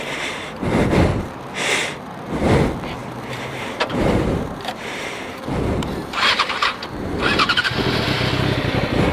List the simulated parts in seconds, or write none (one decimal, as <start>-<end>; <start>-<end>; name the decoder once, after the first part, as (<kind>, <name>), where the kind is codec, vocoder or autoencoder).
3.0-7.8 (vocoder, BigVGAN v2)